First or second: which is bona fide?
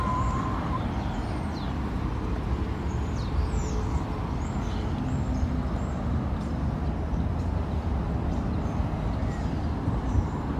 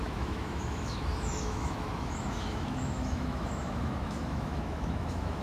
first